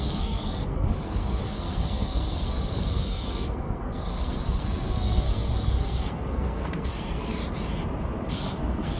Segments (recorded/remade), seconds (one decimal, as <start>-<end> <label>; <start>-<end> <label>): 0.0-7.4 remade; 7.4-8.3 recorded; 8.3-9.0 remade